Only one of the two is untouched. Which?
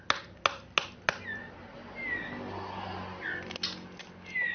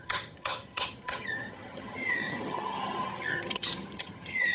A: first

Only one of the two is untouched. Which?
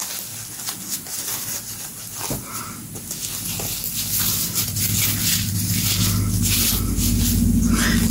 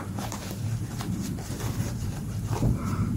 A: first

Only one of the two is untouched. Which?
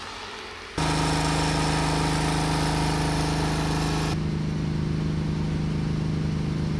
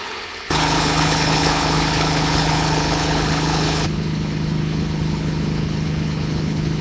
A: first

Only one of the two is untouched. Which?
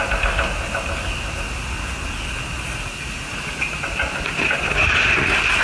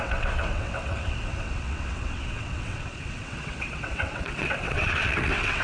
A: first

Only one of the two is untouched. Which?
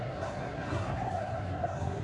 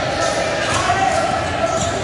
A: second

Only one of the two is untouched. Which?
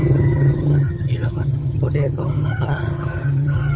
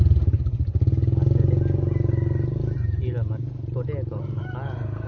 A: second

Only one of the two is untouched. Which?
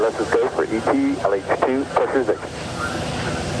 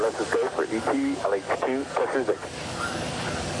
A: first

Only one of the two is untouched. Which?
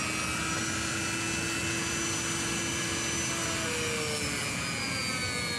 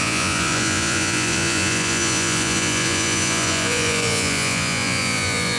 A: first